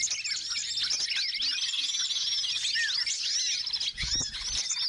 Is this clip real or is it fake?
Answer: real